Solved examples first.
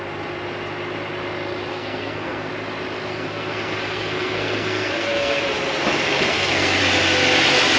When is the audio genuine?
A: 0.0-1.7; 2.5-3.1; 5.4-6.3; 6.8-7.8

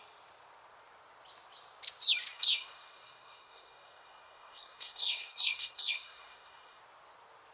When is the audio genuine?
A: 0.0-2.3; 6.8-7.5

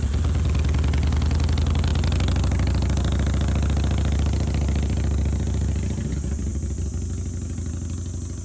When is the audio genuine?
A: 0.0-8.4

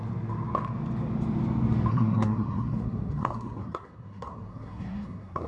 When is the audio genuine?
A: 0.0-1.9

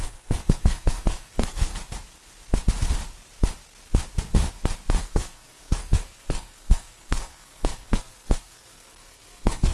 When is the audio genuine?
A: 1.7-5.0